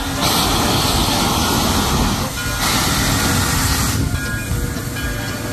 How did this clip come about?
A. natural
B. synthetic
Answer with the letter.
A